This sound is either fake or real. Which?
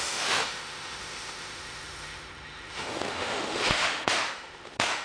fake